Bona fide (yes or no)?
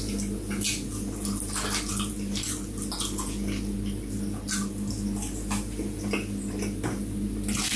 yes